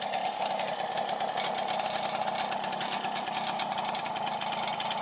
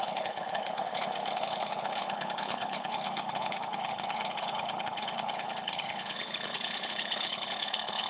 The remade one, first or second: second